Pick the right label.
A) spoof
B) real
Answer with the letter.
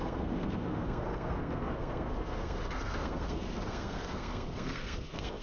A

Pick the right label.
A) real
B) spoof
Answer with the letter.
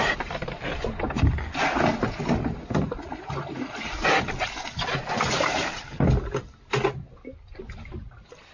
A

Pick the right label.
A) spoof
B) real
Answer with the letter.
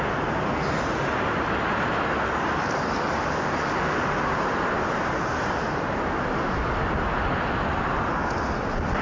B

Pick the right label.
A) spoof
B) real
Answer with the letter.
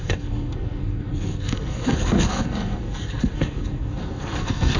A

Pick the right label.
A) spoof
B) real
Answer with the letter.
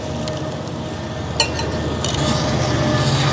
B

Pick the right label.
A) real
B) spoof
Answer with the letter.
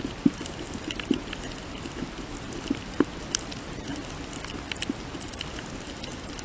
A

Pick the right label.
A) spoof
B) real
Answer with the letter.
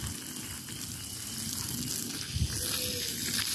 B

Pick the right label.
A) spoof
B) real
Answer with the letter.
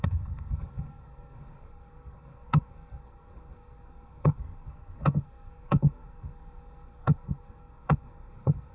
A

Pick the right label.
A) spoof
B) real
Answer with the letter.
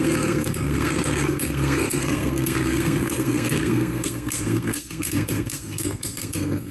A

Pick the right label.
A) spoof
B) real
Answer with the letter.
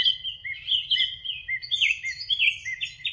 B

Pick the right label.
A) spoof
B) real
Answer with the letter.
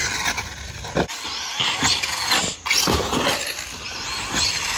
B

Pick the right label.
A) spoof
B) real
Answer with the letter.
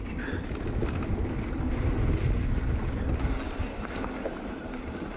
B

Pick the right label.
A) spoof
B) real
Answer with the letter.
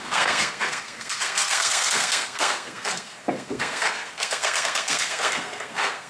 A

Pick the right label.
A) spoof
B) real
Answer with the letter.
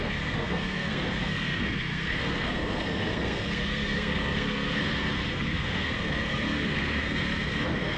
A